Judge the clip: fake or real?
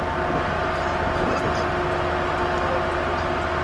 real